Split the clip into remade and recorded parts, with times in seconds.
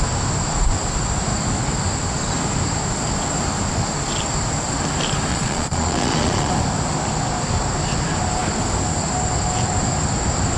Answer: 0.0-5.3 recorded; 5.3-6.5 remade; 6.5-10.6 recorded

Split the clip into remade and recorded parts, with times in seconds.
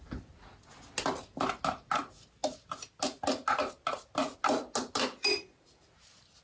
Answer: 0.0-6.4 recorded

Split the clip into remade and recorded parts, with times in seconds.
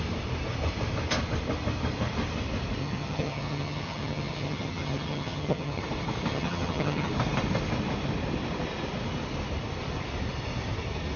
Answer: 0.0-2.8 recorded; 2.8-5.8 remade; 5.8-6.3 recorded; 6.3-7.1 remade; 7.1-11.2 recorded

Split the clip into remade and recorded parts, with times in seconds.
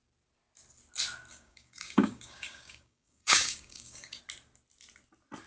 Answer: 0.0-1.3 recorded; 1.3-4.2 remade; 4.2-5.5 recorded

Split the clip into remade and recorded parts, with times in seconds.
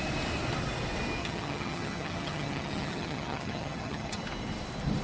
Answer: 0.0-1.2 recorded; 1.2-4.2 remade; 4.2-5.0 recorded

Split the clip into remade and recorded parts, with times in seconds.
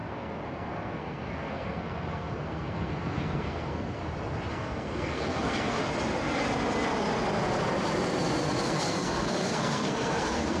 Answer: 0.0-4.0 remade; 4.0-4.5 recorded; 4.5-5.8 remade; 5.8-8.6 recorded; 8.6-10.6 remade